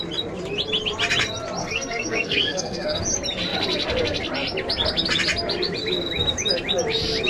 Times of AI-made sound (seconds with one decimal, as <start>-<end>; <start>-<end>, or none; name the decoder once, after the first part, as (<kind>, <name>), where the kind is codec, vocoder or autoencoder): 1.6-3.0 (codec, SNAC)